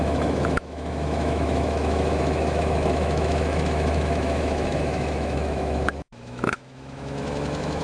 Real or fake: fake